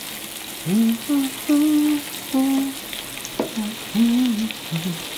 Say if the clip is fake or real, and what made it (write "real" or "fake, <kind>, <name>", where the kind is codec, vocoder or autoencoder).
real